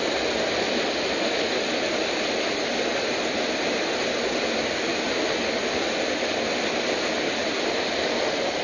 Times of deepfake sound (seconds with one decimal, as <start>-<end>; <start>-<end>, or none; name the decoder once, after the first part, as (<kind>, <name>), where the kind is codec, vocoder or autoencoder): none